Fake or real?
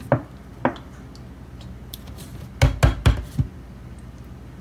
real